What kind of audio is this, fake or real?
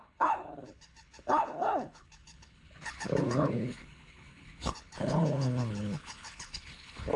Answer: fake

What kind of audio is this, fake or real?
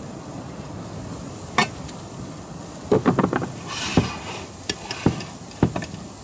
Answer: real